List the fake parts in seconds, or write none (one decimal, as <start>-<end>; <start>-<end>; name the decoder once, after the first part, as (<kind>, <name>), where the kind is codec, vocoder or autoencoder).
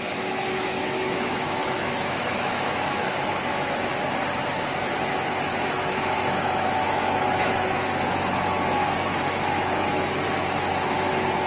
0.0-3.9 (autoencoder, DAC-VAE); 5.1-10.7